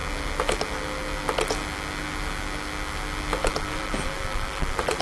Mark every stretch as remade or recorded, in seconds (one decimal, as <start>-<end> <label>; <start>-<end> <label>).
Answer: 0.0-3.4 recorded; 3.4-5.0 remade